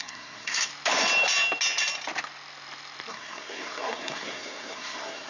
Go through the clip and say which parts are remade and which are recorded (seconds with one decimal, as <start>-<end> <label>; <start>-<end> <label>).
0.0-0.7 remade; 0.7-3.1 recorded; 3.1-5.3 remade

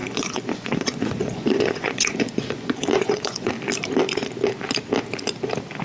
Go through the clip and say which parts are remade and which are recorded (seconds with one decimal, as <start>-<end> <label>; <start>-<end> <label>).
0.0-3.5 remade; 3.5-5.8 recorded

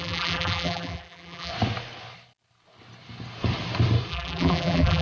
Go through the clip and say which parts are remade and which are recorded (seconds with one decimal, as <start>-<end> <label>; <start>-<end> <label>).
0.0-1.5 remade; 1.5-4.1 recorded; 4.1-5.0 remade